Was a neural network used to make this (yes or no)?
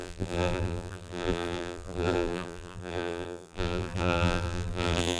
yes